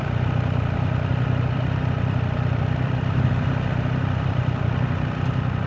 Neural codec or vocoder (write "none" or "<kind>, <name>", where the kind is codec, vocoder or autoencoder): none